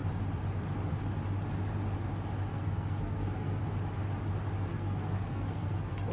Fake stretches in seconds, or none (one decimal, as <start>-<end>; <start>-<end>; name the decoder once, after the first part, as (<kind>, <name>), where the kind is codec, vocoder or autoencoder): 2.5-3.6 (codec, SNAC); 4.7-6.1